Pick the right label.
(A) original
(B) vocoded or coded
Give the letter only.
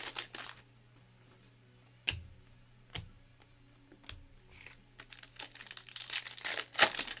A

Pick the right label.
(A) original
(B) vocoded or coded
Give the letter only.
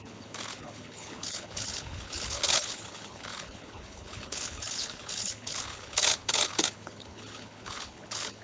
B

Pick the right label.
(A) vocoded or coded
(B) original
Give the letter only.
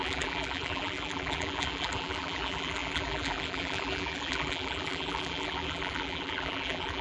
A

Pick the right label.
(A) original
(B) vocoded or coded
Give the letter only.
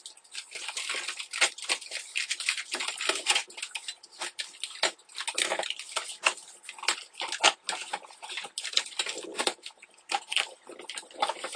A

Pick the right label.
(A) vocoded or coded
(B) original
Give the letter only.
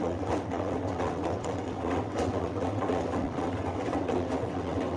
A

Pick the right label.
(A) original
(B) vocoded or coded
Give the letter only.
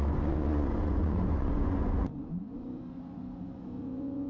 B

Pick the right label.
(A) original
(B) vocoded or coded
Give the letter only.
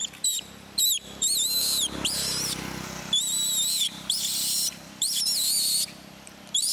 B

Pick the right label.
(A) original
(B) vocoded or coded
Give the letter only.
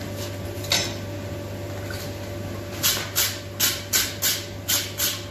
A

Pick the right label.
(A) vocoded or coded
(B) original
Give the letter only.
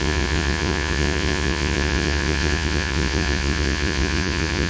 A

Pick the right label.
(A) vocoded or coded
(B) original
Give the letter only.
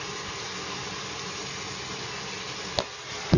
B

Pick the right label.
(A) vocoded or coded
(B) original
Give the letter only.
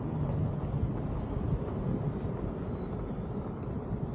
B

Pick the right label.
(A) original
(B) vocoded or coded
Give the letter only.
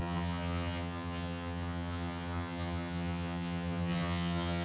B